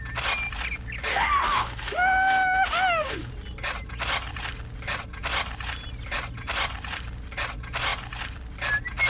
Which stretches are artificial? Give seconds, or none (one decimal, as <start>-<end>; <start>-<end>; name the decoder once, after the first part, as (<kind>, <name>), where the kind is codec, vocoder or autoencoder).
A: 1.1-3.3 (autoencoder, DAC-VAE)